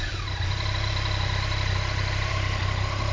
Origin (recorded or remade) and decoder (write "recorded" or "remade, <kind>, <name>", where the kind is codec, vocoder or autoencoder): remade, vocoder, BigVGAN v2